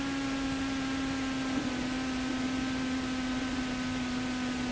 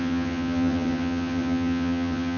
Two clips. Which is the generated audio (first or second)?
second